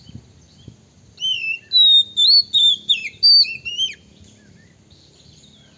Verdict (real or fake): real